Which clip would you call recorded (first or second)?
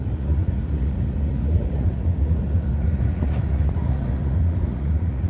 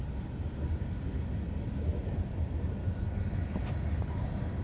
second